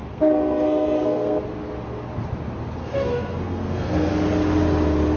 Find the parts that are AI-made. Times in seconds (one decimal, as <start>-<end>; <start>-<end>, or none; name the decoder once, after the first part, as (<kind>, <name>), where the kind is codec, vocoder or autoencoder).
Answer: 0.0-1.4 (codec, SNAC); 2.8-4.1